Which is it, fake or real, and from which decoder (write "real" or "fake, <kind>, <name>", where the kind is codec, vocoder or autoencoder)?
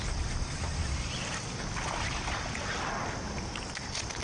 real